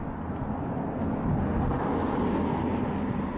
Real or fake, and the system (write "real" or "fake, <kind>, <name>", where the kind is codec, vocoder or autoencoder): real